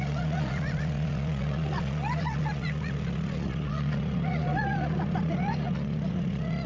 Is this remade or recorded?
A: remade